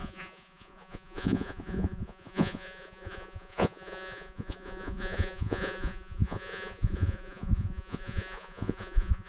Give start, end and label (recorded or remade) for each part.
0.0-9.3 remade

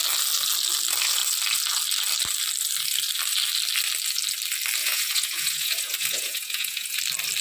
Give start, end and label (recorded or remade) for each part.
0.0-4.8 recorded; 4.8-7.0 remade; 7.0-7.4 recorded

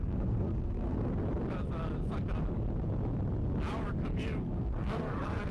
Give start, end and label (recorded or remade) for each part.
0.0-1.1 remade; 1.1-4.4 recorded; 4.4-5.5 remade

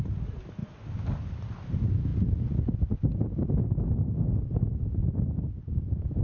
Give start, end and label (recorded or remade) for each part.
0.0-6.2 recorded

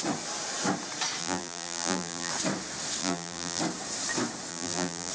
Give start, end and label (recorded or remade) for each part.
0.0-1.2 recorded; 1.2-2.3 remade; 2.3-3.0 recorded; 3.0-3.6 remade; 3.6-4.5 recorded; 4.5-5.1 remade

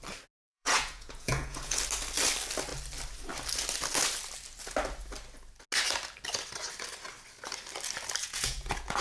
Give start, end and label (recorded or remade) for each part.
0.0-0.4 recorded; 0.4-1.8 remade; 1.8-8.2 recorded; 8.2-9.0 remade